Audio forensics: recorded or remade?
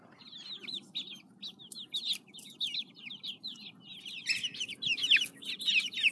recorded